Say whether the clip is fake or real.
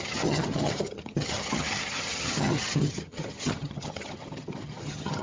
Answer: fake